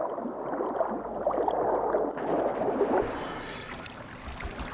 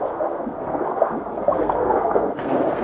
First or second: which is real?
first